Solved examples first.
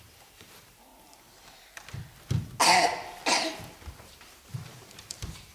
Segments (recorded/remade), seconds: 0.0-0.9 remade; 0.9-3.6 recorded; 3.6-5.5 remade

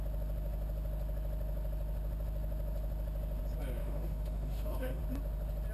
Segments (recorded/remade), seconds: 0.0-3.8 recorded; 3.8-5.0 remade; 5.0-5.7 recorded

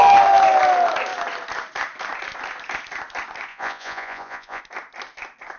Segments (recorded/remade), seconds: 0.0-3.5 recorded; 3.5-4.6 remade; 4.6-5.6 recorded

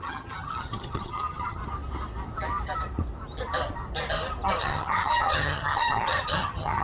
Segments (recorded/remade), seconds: 0.0-1.6 remade; 1.6-4.6 recorded; 4.6-6.8 remade

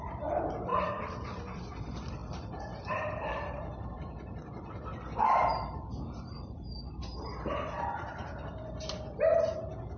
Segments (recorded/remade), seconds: 0.0-10.0 remade

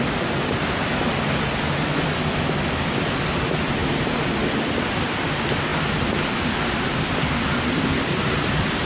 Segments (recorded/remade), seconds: 0.0-8.9 recorded